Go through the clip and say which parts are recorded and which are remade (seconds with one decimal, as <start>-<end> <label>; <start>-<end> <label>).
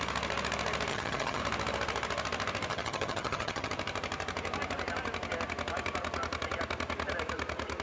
0.0-0.9 recorded; 0.9-1.4 remade; 1.4-2.7 recorded; 2.7-3.7 remade; 3.7-7.8 recorded